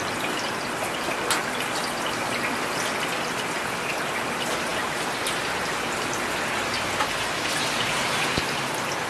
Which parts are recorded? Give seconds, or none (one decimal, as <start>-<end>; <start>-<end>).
0.0-9.1